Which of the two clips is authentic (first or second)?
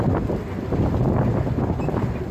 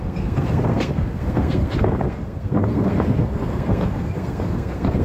first